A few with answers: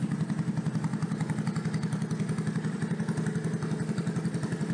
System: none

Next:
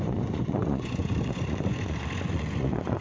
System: vocoder, Vocos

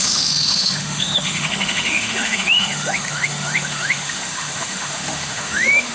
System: autoencoder, DAC-VAE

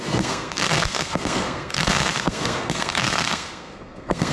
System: codec, SNAC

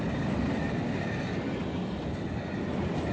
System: none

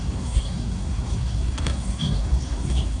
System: codec, SNAC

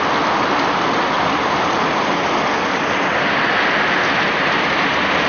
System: none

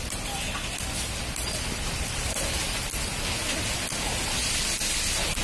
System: none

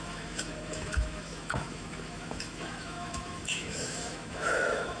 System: autoencoder, DAC-VAE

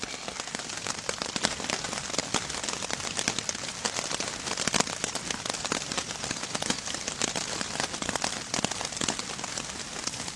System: none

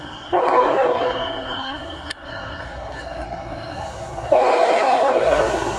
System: codec, SNAC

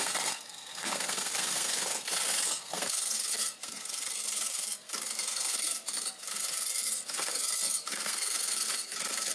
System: codec, SNAC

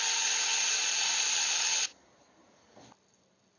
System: vocoder, BigVGAN v2